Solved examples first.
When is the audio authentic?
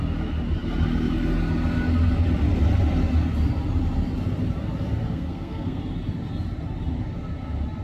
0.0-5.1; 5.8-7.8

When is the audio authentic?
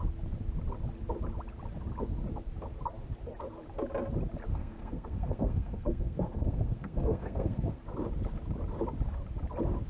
0.0-4.5; 7.8-9.9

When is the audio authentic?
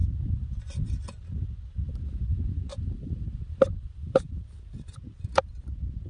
0.0-6.1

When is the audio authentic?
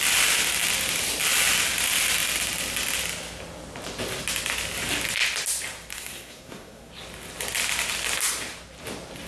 0.0-5.9; 6.9-9.3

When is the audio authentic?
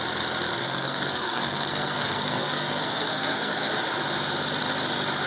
0.0-0.5; 3.7-5.3